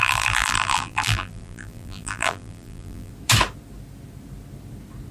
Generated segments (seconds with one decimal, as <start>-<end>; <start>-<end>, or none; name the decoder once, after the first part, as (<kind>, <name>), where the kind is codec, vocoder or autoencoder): 0.0-3.1 (vocoder, BigVGAN v2)